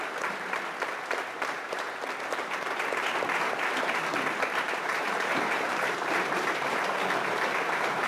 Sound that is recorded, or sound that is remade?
remade